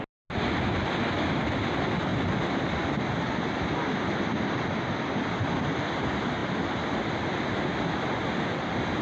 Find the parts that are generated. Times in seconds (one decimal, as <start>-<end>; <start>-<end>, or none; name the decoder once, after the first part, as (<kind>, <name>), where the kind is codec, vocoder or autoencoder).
none